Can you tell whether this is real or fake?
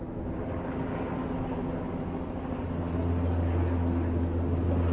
real